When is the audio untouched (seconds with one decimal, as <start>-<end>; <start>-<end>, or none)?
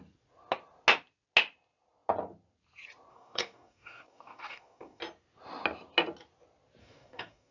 0.0-3.1; 5.0-6.8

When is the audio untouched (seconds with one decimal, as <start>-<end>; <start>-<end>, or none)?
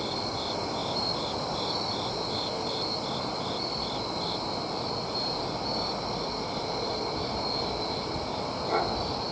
0.0-9.3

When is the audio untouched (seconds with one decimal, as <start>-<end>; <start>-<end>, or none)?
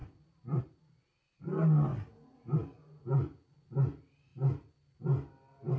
0.0-5.8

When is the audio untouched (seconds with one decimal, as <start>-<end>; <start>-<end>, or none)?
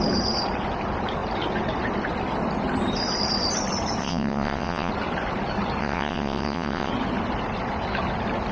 0.0-4.0; 4.9-5.8; 6.9-8.5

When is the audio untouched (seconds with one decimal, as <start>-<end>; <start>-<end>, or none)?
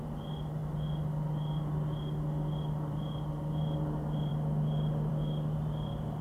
0.0-6.2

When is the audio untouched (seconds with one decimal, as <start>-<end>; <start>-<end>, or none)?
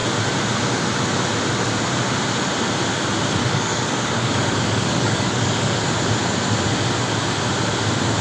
0.0-3.4; 5.8-8.2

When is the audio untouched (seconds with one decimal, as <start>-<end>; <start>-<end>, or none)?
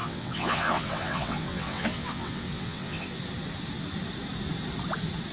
3.2-5.3